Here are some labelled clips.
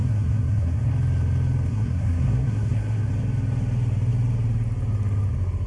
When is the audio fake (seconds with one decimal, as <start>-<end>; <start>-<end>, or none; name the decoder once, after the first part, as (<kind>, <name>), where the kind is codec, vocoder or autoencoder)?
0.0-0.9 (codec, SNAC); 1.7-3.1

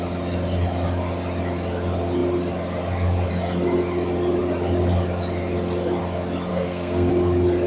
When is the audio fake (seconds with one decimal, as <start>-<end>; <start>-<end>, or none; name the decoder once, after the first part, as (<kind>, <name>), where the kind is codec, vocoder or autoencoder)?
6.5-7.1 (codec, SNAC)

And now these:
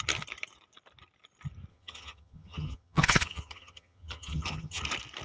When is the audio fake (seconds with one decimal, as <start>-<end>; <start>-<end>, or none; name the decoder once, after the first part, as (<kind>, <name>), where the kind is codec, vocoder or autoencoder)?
1.7-4.8 (vocoder, HiFi-GAN)